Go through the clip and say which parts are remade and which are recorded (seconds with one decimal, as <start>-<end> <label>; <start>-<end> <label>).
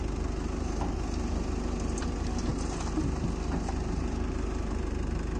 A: 0.0-5.4 recorded